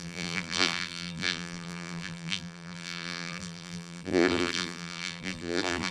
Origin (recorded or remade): remade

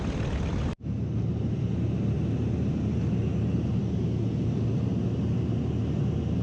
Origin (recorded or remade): recorded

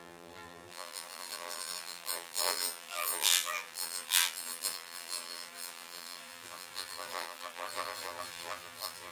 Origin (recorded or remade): remade